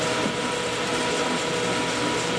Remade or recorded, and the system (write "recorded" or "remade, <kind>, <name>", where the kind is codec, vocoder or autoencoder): recorded